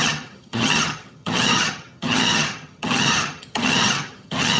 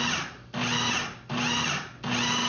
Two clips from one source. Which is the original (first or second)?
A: second